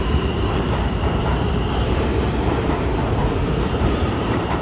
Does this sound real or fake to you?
fake